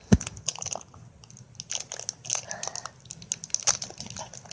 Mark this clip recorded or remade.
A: recorded